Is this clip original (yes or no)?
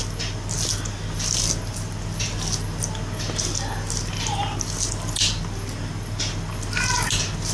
yes